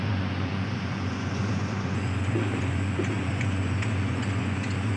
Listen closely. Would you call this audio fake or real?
fake